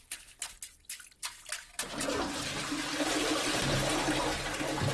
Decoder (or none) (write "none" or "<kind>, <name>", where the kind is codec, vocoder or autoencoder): none